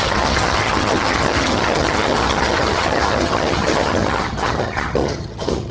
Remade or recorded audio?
remade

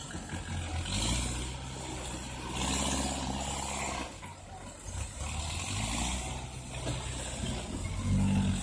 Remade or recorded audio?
recorded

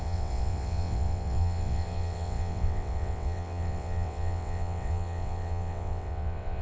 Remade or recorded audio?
remade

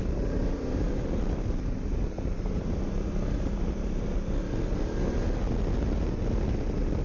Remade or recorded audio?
recorded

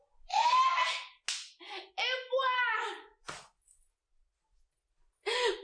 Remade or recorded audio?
recorded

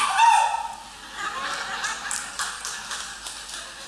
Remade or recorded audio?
recorded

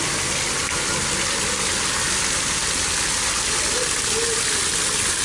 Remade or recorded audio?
recorded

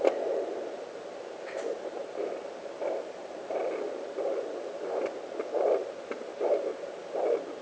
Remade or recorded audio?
recorded